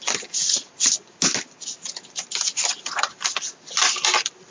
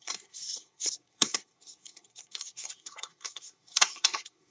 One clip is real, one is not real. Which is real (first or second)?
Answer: first